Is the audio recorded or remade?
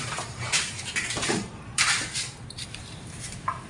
remade